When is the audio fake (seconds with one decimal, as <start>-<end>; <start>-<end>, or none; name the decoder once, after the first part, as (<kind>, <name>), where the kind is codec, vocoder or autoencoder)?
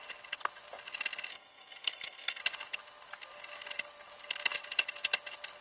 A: 1.3-2.4 (codec, SNAC)